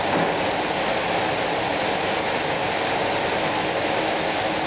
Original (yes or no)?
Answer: yes